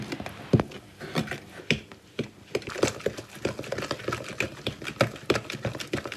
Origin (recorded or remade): recorded